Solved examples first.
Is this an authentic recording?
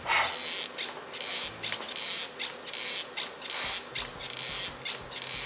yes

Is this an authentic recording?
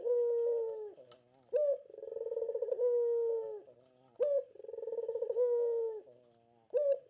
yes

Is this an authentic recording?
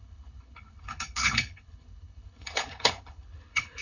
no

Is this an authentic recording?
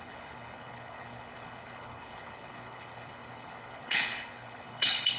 no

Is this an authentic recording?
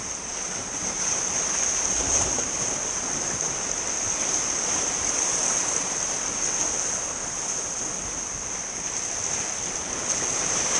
yes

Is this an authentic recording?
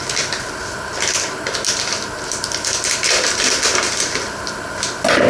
yes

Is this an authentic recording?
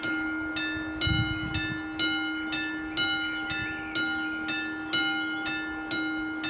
yes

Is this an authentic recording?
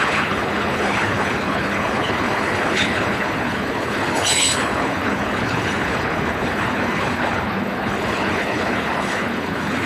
no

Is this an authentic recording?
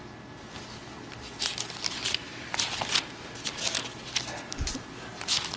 yes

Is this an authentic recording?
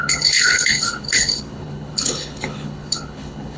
no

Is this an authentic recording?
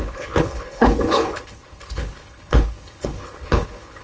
no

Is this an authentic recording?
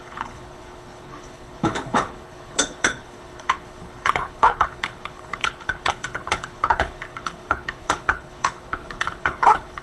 no